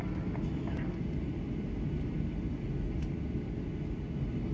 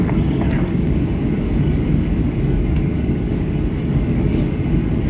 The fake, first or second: second